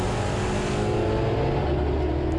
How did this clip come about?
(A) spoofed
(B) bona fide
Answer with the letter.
B